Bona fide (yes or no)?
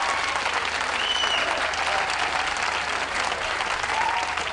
yes